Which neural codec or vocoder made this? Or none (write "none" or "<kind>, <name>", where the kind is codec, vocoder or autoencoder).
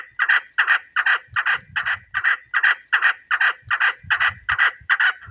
none